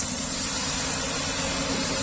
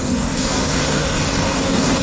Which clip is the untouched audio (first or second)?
first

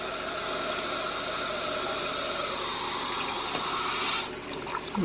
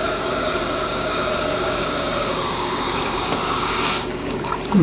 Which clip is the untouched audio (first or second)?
first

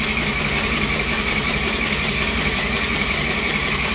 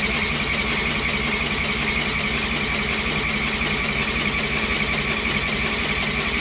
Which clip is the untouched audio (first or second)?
second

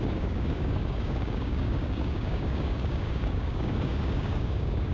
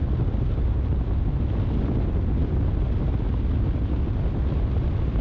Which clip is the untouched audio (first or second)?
second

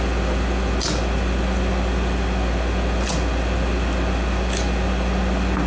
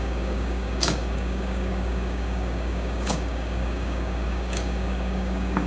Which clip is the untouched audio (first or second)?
first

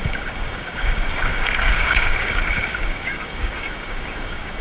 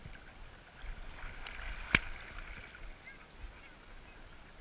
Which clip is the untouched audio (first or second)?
second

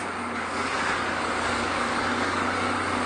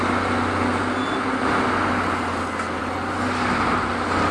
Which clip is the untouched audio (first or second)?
second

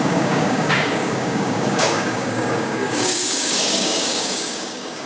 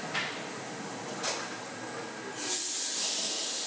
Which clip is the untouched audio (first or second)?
second